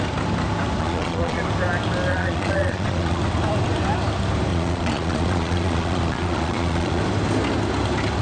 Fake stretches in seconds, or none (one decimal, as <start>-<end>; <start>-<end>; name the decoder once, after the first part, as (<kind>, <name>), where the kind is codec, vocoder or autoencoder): 0.8-1.4 (vocoder, Vocos); 2.1-3.2; 4.5-7.0